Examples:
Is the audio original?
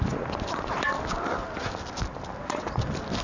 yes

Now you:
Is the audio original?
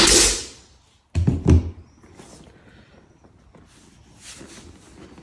yes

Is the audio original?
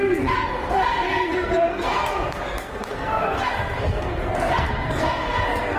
no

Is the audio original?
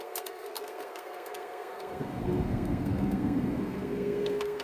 no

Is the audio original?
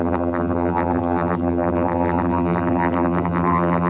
no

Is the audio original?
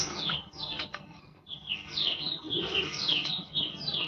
no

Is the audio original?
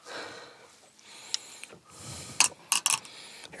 yes